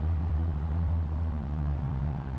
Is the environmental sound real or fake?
fake